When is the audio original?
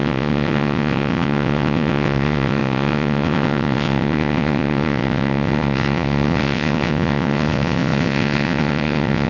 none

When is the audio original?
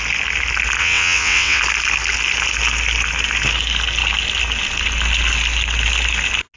0.0-0.8; 1.6-6.6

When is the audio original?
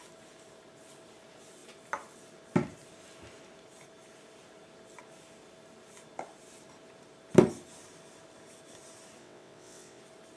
0.0-9.2; 10.0-10.4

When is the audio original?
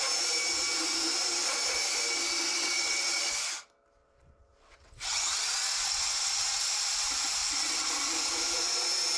0.0-2.5; 3.2-4.0; 6.7-7.4; 7.9-9.2